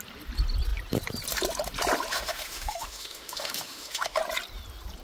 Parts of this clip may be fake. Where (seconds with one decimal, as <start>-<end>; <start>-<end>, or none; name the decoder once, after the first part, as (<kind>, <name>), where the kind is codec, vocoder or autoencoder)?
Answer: 2.1-4.2 (autoencoder, DAC-VAE)